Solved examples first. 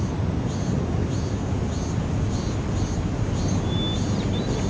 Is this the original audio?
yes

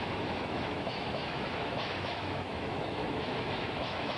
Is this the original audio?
no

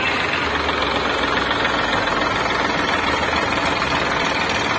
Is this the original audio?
yes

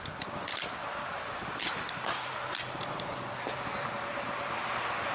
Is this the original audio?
no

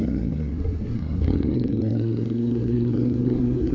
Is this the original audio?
no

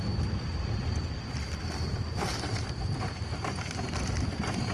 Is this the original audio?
yes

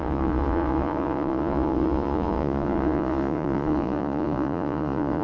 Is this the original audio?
no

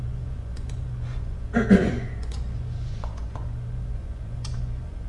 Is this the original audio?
no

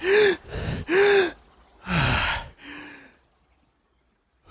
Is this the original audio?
yes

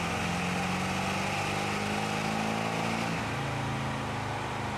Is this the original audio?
yes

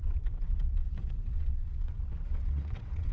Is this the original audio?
no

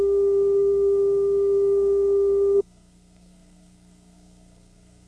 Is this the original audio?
no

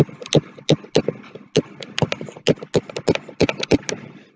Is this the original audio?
yes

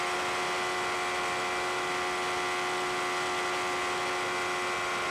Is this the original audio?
yes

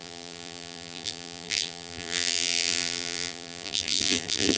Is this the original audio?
no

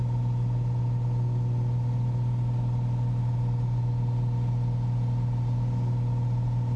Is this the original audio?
yes